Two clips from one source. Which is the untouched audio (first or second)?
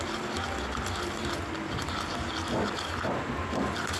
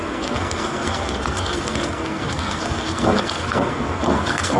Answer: first